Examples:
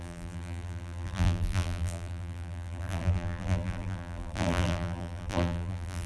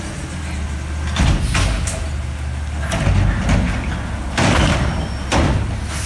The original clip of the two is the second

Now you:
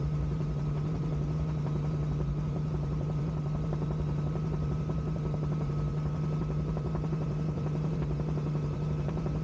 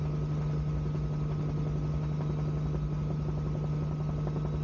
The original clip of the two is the second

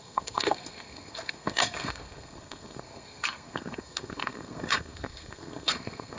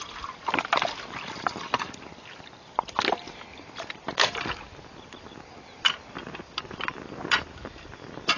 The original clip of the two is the second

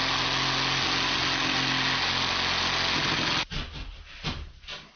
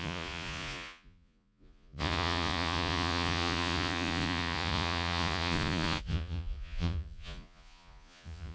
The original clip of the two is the first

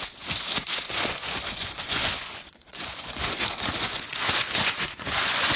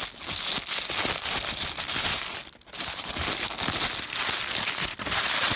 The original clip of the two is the second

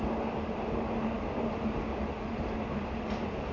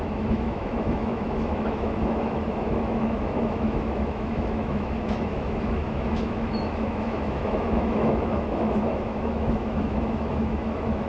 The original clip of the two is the first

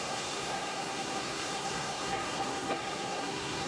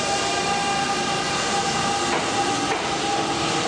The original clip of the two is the second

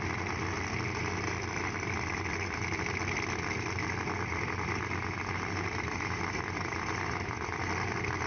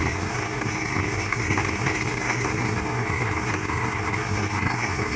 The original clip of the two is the first